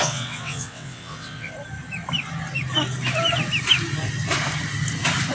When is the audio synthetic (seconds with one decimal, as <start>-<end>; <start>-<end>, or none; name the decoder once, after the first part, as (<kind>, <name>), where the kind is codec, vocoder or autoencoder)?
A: 0.0-1.5 (vocoder, WaveNeXt)